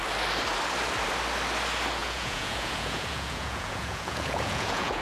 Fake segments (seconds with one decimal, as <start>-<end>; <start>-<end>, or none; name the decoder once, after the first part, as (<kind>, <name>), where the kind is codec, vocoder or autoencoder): 2.0-5.0 (vocoder, Vocos)